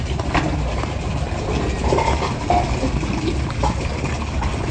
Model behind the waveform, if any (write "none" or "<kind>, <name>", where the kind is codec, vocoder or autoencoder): none